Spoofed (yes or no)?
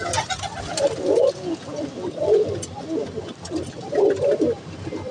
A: no